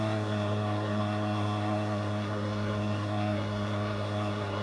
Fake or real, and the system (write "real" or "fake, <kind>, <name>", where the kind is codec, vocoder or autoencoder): fake, codec, SNAC